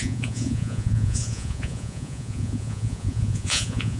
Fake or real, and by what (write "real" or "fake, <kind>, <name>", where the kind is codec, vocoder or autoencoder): fake, vocoder, Vocos